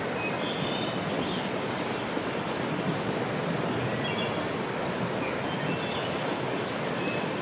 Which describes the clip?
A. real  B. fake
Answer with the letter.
A